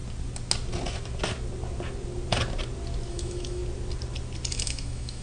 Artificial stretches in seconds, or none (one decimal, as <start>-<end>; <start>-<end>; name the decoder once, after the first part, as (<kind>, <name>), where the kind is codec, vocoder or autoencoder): 3.1-3.6 (autoencoder, DAC-VAE); 4.5-5.2